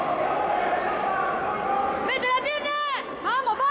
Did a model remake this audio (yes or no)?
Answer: no